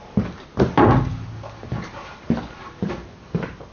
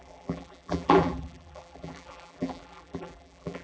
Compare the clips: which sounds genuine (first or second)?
first